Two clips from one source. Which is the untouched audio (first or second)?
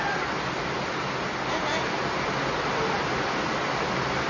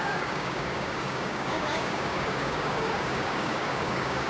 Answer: first